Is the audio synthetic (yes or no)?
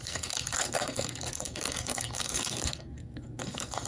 yes